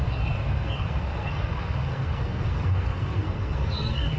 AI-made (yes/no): yes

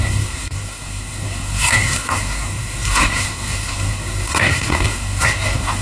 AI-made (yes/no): yes